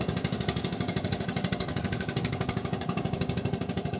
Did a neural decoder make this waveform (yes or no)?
yes